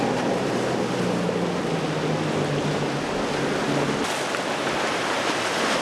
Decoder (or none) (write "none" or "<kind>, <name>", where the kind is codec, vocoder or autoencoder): none